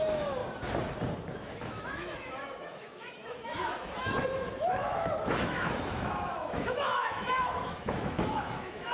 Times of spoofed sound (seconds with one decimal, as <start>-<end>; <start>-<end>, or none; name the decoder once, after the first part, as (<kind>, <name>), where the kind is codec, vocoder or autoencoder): 0.0-0.4 (autoencoder, DAC-VAE); 1.3-8.9